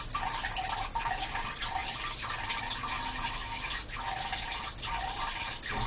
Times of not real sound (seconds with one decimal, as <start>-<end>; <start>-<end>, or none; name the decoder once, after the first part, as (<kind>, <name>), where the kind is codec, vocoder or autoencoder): none